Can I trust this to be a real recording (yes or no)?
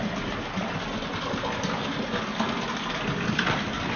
yes